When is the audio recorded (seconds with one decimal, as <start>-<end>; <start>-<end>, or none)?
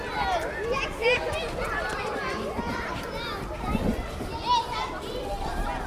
0.0-5.9